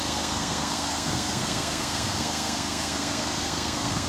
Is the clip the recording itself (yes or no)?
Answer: no